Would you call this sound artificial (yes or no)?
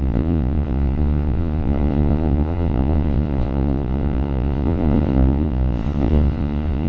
yes